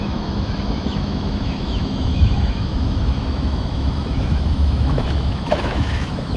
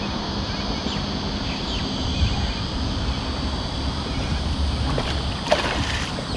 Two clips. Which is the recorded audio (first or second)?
second